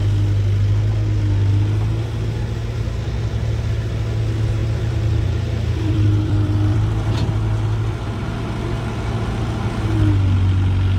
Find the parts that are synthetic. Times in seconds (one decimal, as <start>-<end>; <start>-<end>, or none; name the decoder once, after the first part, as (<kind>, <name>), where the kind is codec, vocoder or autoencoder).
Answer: 4.6-8.2 (vocoder, BigVGAN v2)